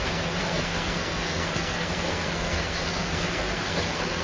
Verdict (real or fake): fake